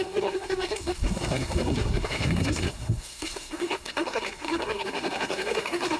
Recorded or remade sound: remade